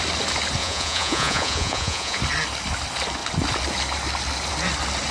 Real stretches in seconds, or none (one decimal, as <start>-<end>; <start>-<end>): 0.0-0.6; 2.2-5.1